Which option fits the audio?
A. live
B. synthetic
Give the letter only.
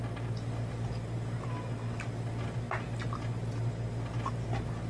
A